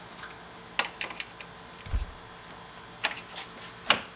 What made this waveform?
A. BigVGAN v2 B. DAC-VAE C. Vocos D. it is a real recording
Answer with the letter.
D